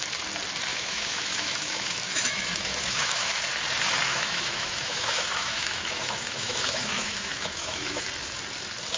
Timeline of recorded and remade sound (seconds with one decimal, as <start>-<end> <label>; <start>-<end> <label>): 0.0-0.7 recorded; 0.7-3.3 remade; 3.3-4.1 recorded; 4.1-8.0 remade; 8.0-9.0 recorded